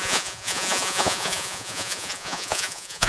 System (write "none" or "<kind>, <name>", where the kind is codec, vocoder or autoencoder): vocoder, Vocos